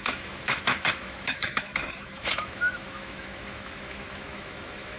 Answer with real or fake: fake